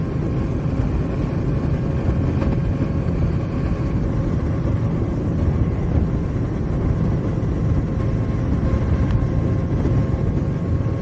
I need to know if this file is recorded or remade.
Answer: recorded